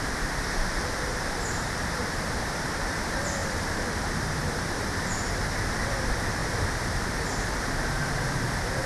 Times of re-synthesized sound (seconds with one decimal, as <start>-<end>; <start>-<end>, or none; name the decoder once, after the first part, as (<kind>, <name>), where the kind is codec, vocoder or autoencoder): 1.1-2.9 (vocoder, BigVGAN v2); 3.4-5.0; 6.4-8.9